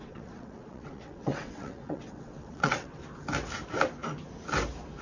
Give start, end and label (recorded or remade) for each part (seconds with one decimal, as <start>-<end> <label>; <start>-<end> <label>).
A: 0.0-3.0 remade; 3.0-5.0 recorded